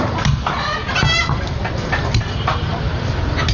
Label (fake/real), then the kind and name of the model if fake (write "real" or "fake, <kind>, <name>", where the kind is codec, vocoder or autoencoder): real